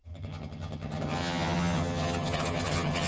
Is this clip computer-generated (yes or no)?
yes